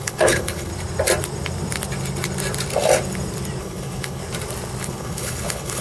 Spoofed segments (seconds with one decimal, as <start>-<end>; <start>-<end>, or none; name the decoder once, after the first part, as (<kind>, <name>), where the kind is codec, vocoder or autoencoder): 0.0-0.7 (codec, HILCodec); 3.6-4.2; 4.8-5.8